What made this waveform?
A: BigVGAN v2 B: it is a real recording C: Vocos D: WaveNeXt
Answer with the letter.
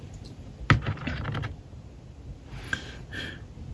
B